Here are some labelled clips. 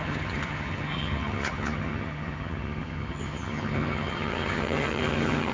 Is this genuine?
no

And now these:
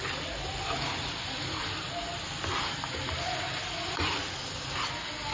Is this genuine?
yes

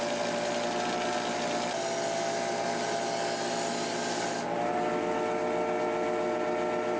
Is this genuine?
yes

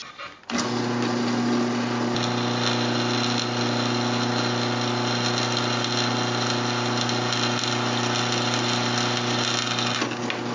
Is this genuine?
yes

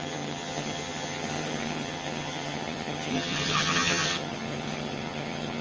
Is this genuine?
no